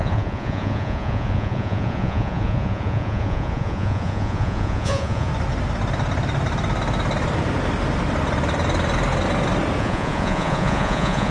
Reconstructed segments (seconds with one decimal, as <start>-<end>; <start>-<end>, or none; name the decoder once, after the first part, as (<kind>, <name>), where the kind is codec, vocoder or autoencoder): 0.0-5.3 (vocoder, Vocos); 9.8-11.3